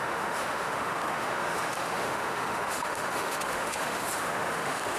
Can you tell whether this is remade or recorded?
remade